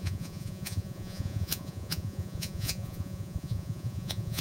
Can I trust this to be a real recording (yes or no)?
no